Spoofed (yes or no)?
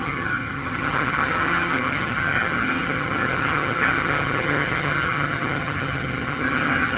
yes